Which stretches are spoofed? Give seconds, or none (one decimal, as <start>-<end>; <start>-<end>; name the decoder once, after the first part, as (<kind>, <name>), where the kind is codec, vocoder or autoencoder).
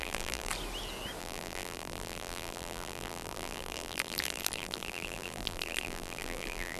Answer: 0.0-0.5 (vocoder, BigVGAN v2); 1.2-6.8